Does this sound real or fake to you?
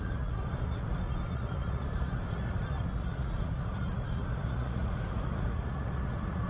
fake